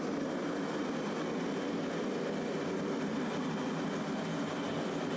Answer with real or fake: real